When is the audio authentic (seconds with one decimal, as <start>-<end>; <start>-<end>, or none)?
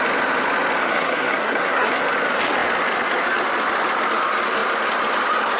0.0-0.8; 2.0-5.6